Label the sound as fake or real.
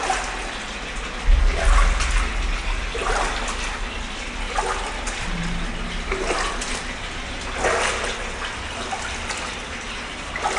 real